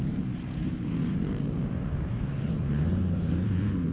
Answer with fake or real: fake